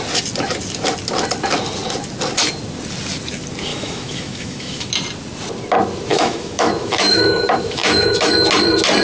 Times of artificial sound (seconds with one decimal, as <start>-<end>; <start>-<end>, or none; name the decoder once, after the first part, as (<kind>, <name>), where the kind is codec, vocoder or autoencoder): 3.7-4.9 (autoencoder, DAC-VAE); 6.1-8.3